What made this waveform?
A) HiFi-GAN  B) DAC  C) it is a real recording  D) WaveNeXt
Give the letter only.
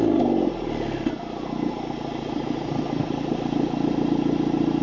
C